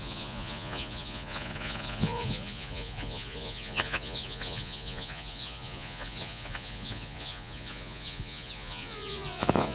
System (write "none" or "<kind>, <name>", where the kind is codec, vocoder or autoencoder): vocoder, Vocos